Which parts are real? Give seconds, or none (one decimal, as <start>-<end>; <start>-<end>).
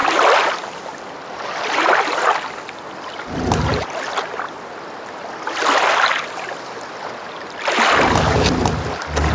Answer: 0.0-9.3